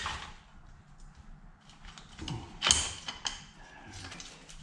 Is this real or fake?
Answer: real